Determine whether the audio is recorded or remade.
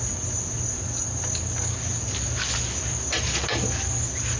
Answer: recorded